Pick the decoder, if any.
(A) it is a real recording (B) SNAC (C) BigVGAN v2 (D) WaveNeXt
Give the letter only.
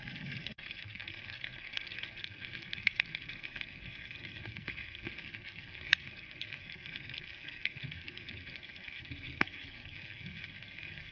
B